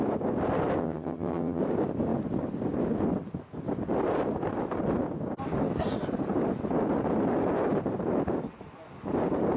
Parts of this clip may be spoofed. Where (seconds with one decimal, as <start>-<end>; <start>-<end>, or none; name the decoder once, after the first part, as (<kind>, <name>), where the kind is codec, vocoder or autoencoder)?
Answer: 0.8-1.6 (vocoder, HiFi-GAN)